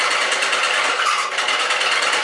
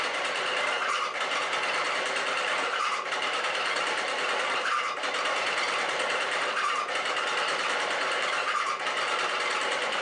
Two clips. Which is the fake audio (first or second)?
second